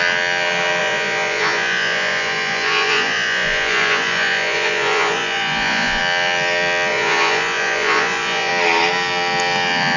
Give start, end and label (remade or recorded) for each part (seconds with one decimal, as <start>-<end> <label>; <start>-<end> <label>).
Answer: 0.0-0.8 recorded; 0.8-6.0 remade; 6.0-6.9 recorded; 6.9-8.5 remade; 8.5-10.0 recorded